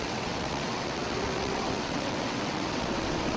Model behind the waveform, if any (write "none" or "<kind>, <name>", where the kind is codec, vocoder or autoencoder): vocoder, WaveNeXt